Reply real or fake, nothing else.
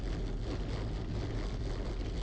real